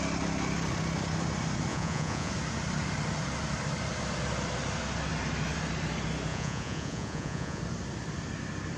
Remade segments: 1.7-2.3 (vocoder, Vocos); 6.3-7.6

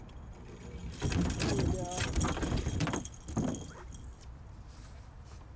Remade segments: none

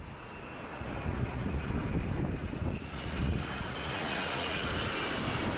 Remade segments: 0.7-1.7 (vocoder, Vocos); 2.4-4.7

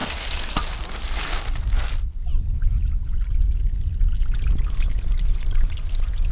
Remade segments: none